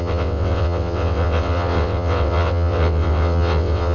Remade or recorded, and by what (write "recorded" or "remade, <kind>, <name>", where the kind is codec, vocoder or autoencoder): remade, vocoder, WaveNeXt